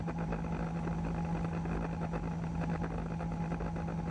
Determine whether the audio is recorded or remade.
recorded